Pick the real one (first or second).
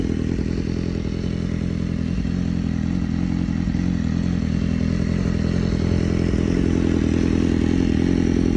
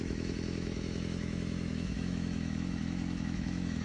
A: first